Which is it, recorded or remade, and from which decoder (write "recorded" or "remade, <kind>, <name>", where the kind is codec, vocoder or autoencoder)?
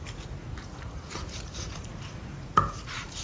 remade, vocoder, Vocos